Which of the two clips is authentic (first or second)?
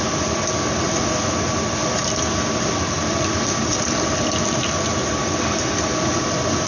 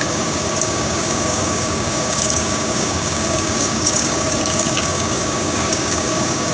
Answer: first